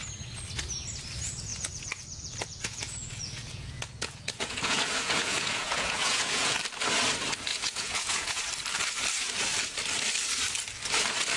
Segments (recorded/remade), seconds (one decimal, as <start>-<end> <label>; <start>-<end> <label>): 0.0-1.5 recorded; 1.5-6.6 remade; 6.6-7.5 recorded; 7.5-8.4 remade; 8.4-11.4 recorded